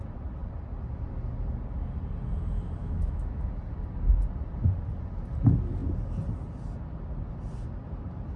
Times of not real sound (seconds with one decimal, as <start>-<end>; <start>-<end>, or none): 2.8-3.5